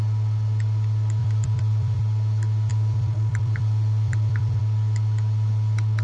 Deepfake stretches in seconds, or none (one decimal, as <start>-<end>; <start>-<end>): 1.2-2.0; 2.7-4.6